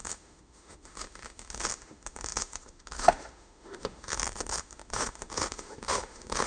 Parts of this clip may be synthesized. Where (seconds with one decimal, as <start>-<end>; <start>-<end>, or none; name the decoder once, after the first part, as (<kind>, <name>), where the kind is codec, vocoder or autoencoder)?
0.0-6.5 (autoencoder, DAC-VAE)

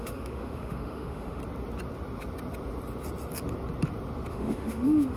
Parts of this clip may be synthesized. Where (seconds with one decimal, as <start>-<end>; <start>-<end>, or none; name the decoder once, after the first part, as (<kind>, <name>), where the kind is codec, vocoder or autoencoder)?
0.0-1.4 (autoencoder, DAC-VAE); 4.3-5.2

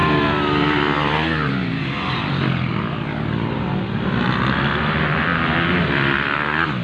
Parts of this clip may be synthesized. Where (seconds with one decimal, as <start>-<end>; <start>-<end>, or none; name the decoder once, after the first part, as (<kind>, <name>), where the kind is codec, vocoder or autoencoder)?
none

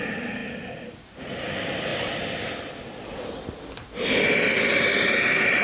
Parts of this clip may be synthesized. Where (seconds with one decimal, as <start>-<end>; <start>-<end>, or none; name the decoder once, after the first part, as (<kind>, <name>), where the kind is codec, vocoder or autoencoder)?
none

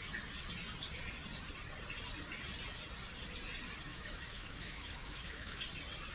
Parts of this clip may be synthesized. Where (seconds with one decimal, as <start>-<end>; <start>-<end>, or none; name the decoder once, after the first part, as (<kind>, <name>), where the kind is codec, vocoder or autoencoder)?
3.9-5.6 (autoencoder, DAC-VAE)

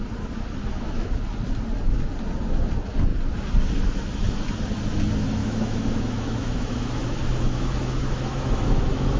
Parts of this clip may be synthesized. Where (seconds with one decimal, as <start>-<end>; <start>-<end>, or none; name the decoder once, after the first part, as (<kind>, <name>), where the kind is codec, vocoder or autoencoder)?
0.6-1.1 (autoencoder, DAC-VAE); 5.4-9.2

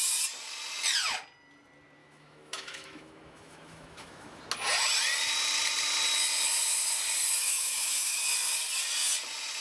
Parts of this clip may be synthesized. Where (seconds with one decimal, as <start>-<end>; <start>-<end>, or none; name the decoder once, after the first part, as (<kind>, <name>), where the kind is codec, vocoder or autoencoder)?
2.0-4.4 (autoencoder, DAC-VAE); 7.4-8.2

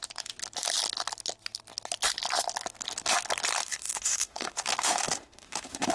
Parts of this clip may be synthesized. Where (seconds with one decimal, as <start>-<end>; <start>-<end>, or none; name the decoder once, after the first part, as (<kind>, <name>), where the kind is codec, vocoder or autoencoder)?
3.6-5.9 (autoencoder, DAC-VAE)